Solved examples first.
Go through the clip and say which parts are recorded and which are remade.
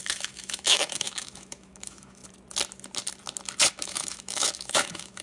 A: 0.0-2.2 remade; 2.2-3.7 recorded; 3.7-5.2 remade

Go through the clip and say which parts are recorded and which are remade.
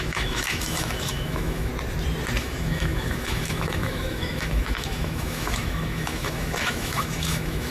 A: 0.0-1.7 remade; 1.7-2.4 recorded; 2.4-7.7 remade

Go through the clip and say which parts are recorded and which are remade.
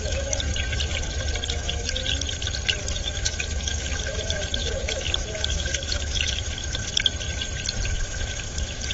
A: 0.0-0.5 remade; 0.5-1.5 recorded; 1.5-2.0 remade; 2.0-3.0 recorded; 3.0-6.9 remade; 6.9-7.9 recorded; 7.9-8.9 remade